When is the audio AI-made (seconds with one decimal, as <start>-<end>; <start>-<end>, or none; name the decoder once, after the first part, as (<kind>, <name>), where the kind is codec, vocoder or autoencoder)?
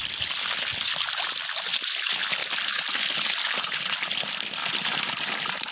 none